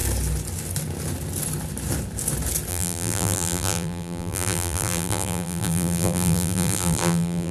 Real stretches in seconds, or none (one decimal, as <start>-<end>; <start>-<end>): 0.0-2.7